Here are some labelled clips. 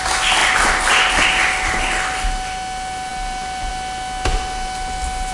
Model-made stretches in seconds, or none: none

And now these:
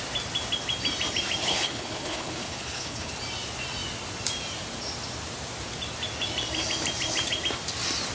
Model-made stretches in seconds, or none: 1.4-3.1 (codec, HILCodec)

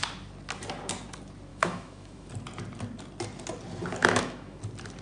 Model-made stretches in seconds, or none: 1.5-2.3 (autoencoder, DAC-VAE); 4.0-4.6

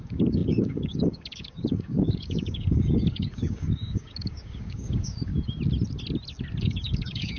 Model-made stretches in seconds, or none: 0.0-5.3 (codec, DAC); 6.6-7.4

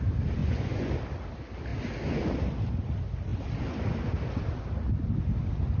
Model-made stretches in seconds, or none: 0.4-0.9 (vocoder, Vocos)

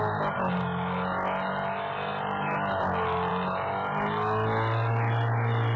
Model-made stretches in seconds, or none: none